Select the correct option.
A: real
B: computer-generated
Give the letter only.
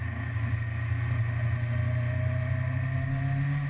A